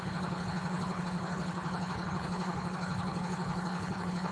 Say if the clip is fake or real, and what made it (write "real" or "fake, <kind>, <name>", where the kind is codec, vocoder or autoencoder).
fake, codec, HILCodec